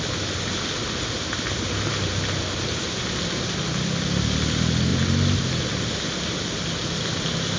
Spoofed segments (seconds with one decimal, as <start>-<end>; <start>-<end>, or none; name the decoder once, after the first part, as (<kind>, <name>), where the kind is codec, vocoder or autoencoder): none